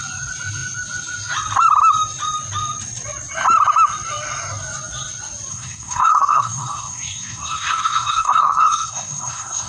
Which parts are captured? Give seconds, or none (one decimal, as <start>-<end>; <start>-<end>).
0.0-5.5